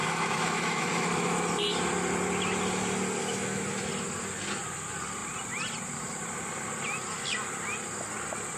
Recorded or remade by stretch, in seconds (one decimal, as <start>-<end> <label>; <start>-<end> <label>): 0.0-1.5 remade; 1.5-3.2 recorded; 3.2-3.9 remade; 3.9-8.6 recorded